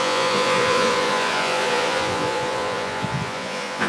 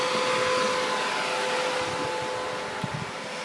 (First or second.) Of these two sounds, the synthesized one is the first